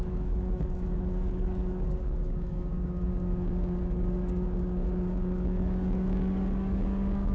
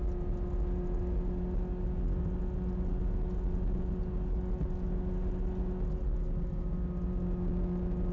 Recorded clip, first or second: second